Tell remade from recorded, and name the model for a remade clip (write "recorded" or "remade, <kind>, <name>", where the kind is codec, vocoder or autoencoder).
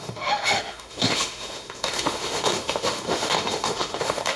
remade, autoencoder, DAC-VAE